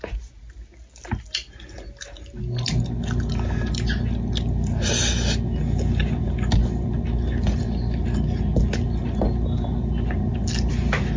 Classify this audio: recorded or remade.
recorded